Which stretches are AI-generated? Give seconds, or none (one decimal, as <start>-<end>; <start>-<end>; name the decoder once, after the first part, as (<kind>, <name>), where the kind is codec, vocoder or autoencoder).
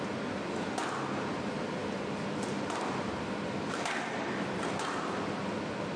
none